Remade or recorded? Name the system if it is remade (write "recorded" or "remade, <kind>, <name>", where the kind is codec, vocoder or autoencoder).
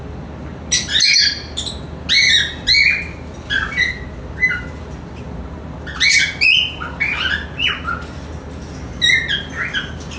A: recorded